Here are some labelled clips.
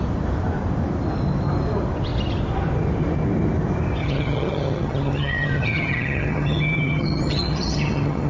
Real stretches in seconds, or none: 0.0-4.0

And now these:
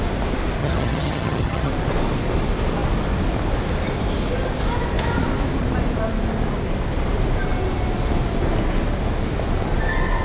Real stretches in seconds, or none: 0.0-0.6; 1.7-10.2

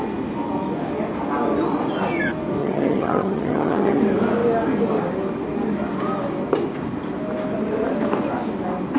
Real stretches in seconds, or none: 0.0-2.6; 4.0-9.0